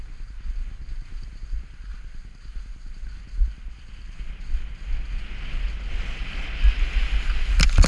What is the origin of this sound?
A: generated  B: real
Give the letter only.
B